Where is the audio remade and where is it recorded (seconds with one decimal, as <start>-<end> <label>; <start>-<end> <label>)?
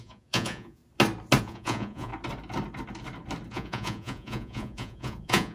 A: 0.0-0.8 remade; 0.8-1.4 recorded; 1.4-2.1 remade; 2.1-3.5 recorded; 3.5-5.5 remade